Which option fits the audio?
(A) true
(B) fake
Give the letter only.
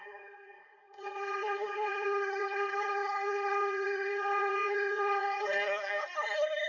B